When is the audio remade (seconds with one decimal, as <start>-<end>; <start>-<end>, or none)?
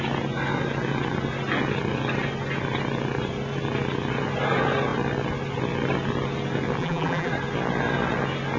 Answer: 6.8-7.3